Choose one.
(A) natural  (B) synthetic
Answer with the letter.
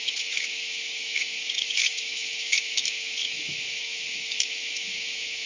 B